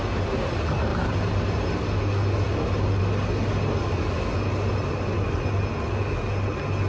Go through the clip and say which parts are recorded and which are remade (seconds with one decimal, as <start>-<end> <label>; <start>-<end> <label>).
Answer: 0.0-6.9 recorded